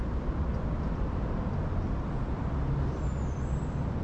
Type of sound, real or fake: real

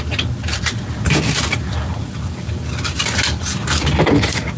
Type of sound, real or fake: real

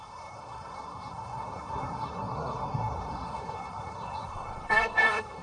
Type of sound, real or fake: fake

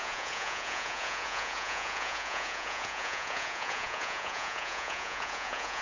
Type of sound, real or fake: fake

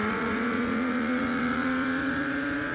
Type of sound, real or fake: fake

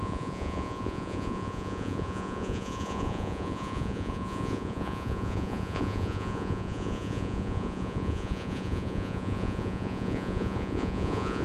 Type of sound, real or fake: fake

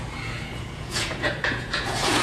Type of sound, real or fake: fake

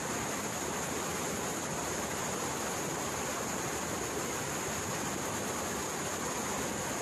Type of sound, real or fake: real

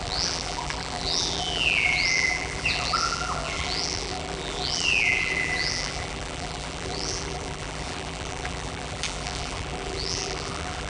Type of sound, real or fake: fake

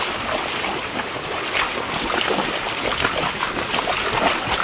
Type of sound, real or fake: real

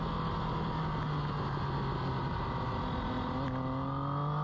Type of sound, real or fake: real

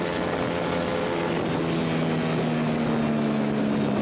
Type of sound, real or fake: real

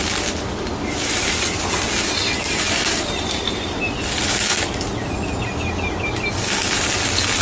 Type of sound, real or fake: real